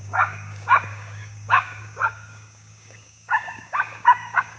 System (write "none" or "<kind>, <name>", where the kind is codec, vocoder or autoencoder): codec, DAC